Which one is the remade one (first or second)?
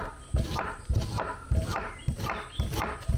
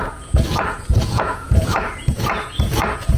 second